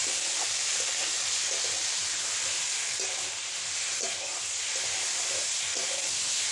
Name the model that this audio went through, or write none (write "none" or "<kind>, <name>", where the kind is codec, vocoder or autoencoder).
vocoder, BigVGAN v2